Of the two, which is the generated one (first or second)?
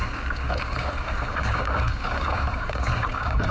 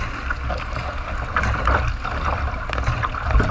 first